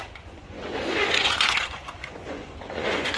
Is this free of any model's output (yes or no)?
no